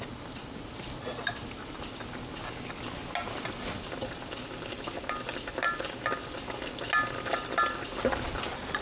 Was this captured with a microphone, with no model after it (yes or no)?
yes